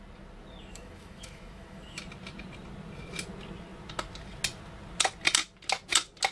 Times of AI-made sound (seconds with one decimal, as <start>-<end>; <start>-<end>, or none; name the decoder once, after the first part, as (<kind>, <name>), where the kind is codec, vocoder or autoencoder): 0.7-2.0 (autoencoder, DAC-VAE)